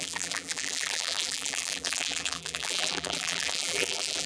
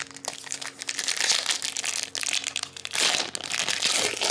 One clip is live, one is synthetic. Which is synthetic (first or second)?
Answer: first